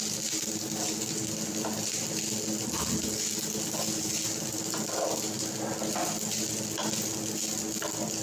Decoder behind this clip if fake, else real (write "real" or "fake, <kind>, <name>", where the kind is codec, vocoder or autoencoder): real